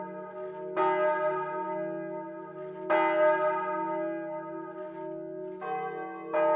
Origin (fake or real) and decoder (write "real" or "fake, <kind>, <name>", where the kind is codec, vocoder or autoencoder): real